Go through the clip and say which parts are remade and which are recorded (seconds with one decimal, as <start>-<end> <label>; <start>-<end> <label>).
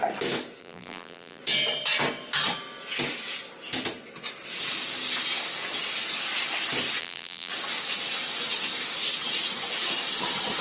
0.0-0.6 recorded; 0.6-1.4 remade; 1.4-7.0 recorded; 7.0-7.5 remade; 7.5-10.6 recorded